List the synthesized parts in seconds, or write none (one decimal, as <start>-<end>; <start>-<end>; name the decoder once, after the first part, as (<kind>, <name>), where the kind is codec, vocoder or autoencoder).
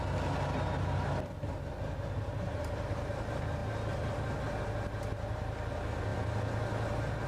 none